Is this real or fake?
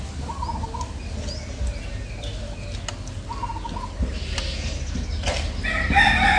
real